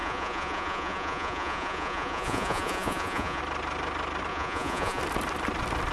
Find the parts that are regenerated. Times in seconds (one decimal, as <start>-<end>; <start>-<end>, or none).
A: 0.0-3.4; 4.3-5.0